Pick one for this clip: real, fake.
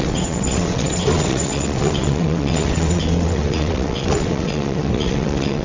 fake